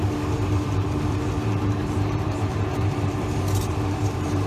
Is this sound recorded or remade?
remade